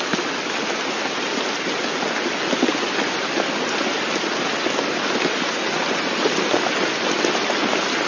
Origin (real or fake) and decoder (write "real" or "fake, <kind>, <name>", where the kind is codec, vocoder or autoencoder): real